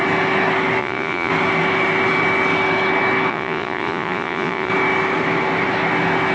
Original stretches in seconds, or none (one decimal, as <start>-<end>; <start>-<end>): 0.0-0.8; 1.3-3.3; 4.7-6.3